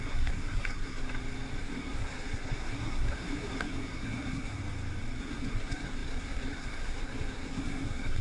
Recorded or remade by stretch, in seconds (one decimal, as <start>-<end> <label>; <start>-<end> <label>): 0.0-1.0 remade; 1.0-1.6 recorded; 1.6-4.6 remade; 4.6-5.2 recorded; 5.2-8.2 remade